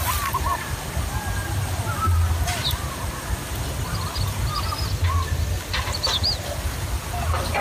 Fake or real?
real